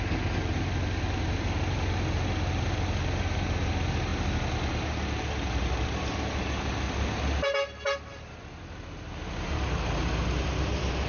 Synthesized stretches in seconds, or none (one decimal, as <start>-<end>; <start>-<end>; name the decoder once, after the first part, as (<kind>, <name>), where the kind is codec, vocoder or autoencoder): none

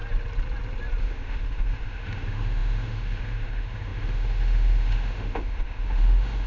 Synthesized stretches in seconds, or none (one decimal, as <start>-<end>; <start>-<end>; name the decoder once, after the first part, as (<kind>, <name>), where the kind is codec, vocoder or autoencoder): 1.0-6.5 (autoencoder, DAC-VAE)

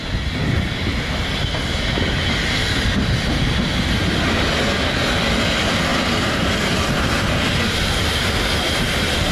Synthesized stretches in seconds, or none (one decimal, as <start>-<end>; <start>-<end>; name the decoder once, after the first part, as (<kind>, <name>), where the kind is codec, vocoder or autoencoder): 5.9-6.9 (vocoder, BigVGAN v2)